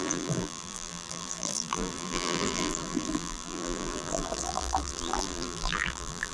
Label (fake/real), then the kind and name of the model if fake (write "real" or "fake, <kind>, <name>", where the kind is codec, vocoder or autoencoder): fake, vocoder, BigVGAN v2